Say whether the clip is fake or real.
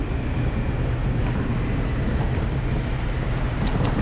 real